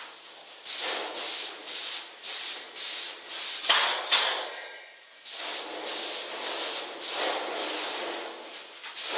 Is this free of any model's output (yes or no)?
yes